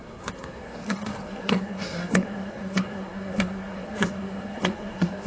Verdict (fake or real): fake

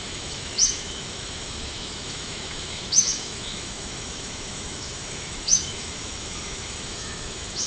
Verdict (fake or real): fake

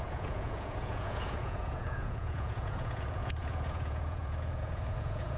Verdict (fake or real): fake